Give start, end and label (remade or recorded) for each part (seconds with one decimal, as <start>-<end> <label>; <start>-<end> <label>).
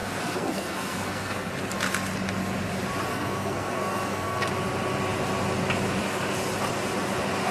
0.0-1.5 remade; 1.5-3.1 recorded; 3.1-4.5 remade; 4.5-7.5 recorded